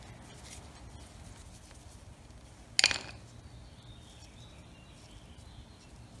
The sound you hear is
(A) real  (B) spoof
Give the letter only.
A